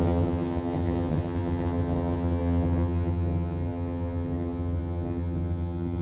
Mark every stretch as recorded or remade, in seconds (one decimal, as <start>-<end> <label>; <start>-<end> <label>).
0.0-6.0 remade